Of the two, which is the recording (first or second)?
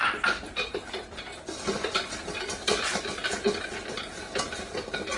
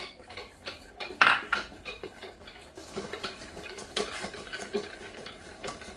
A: first